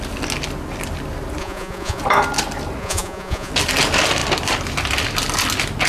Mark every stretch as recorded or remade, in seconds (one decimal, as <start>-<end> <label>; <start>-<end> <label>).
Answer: 0.0-1.4 recorded; 1.4-2.0 remade; 2.0-2.8 recorded; 2.8-3.5 remade; 3.5-5.9 recorded